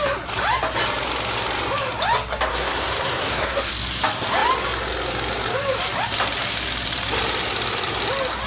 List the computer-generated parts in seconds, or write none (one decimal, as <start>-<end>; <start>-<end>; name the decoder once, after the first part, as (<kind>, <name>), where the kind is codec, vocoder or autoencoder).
2.5-3.7 (codec, SNAC)